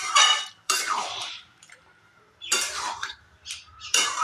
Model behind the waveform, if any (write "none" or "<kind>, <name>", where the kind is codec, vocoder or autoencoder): vocoder, BigVGAN v2